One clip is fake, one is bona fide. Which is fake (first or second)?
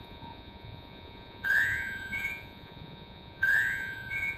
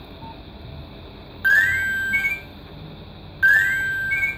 first